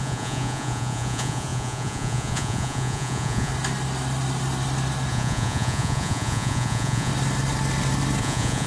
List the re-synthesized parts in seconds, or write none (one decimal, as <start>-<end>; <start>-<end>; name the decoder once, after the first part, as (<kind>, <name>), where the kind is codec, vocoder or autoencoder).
0.0-3.5 (vocoder, Vocos); 5.1-7.1; 8.2-8.7